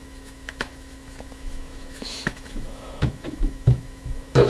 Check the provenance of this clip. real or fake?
fake